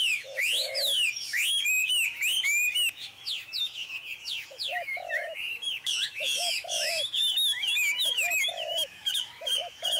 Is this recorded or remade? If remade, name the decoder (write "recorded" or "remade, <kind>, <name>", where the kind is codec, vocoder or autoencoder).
remade, autoencoder, DAC-VAE